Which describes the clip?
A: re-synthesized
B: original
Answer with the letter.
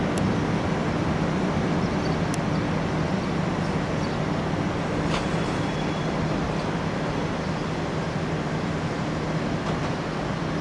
B